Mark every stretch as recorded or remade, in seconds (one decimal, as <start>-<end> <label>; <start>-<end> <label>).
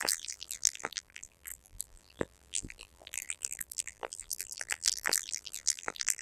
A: 0.0-6.2 remade